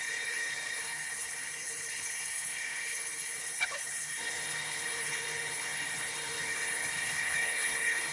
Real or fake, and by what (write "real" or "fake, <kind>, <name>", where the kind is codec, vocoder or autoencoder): fake, codec, HILCodec